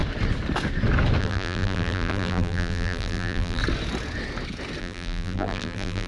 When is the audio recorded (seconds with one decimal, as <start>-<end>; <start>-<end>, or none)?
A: 0.0-1.2; 3.6-4.8